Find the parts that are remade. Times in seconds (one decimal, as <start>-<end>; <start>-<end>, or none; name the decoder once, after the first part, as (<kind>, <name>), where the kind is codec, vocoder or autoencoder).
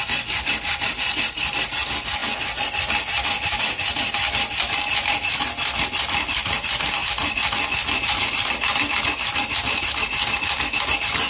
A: none